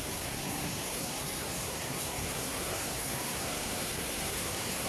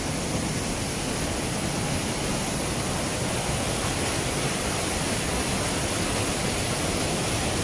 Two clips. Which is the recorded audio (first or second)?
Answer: second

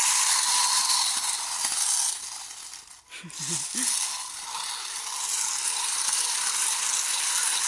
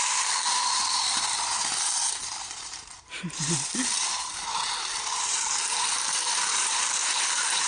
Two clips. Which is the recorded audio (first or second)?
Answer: first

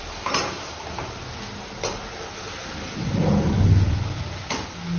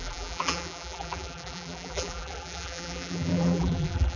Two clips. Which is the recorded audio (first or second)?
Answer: first